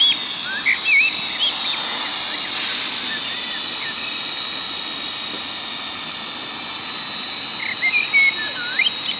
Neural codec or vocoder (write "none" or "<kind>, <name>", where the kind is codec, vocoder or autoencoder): none